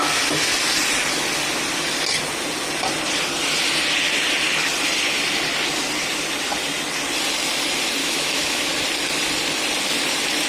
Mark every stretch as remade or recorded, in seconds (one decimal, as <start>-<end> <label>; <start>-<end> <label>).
0.0-8.0 recorded; 8.0-8.7 remade; 8.7-10.5 recorded